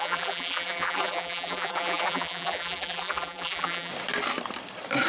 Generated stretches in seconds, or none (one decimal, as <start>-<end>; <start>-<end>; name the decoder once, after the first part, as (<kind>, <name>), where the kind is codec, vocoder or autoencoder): 0.0-3.9 (vocoder, BigVGAN v2)